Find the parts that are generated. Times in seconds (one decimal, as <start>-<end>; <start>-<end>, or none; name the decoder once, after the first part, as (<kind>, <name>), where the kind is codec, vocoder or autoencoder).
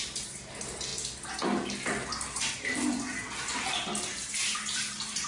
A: 0.0-0.9 (vocoder, BigVGAN v2); 2.1-3.2; 4.1-5.3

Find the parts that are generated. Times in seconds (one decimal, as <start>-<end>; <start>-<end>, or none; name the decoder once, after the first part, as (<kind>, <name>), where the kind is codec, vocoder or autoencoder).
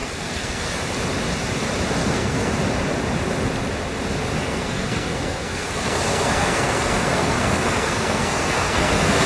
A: 0.0-0.8 (codec, SNAC); 2.0-2.5; 4.4-9.3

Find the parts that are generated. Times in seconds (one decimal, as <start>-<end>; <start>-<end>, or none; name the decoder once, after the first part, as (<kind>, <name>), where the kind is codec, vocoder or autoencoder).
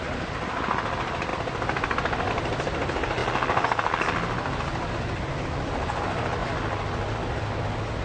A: none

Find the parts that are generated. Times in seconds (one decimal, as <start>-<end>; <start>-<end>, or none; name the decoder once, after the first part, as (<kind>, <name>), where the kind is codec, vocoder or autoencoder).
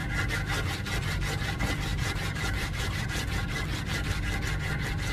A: 1.9-3.0 (vocoder, BigVGAN v2)